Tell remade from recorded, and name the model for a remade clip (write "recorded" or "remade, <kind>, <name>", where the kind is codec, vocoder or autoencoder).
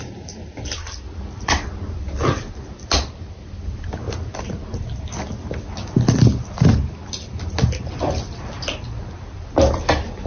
recorded